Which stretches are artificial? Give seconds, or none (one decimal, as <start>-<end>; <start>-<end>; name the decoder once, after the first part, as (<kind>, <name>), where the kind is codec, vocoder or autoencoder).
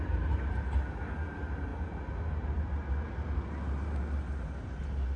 none